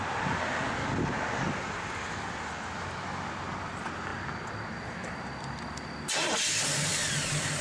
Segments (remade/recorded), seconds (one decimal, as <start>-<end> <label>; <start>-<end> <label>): 0.0-7.6 recorded